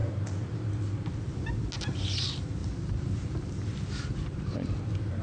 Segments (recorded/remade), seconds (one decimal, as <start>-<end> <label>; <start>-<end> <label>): 0.0-2.6 recorded; 2.6-5.2 remade